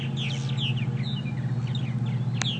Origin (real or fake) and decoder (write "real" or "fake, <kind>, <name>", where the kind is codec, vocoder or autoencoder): real